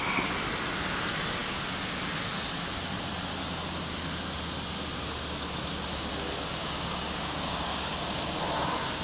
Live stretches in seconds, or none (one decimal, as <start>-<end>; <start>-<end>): 0.0-6.5; 7.9-9.0